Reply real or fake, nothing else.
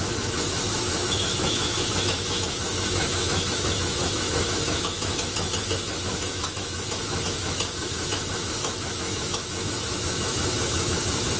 fake